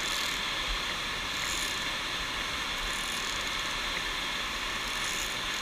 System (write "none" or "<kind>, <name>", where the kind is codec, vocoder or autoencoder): none